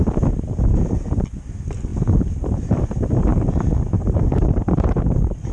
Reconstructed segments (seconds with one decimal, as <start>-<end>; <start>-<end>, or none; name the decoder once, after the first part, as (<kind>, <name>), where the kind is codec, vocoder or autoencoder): 1.9-2.8 (vocoder, BigVGAN v2); 3.3-5.0